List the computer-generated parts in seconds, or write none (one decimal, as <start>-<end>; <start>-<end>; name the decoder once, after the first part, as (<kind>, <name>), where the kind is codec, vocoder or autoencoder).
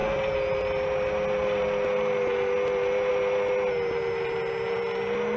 none